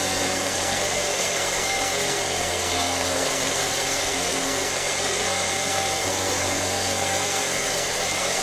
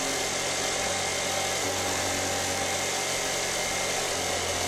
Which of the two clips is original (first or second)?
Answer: second